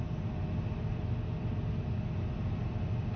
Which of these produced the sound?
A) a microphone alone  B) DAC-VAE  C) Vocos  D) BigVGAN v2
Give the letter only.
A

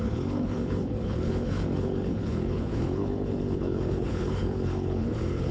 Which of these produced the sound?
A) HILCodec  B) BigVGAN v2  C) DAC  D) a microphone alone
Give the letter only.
A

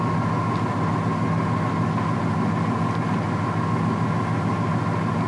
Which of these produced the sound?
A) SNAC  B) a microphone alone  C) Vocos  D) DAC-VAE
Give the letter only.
B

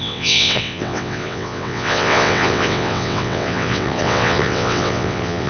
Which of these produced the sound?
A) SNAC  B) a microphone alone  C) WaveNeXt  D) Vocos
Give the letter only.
C